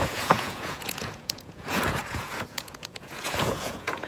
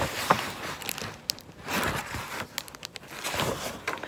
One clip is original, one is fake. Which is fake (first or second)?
first